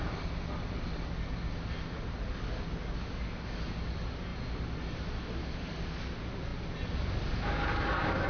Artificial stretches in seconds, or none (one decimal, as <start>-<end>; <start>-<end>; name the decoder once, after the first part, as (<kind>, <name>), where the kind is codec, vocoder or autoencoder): none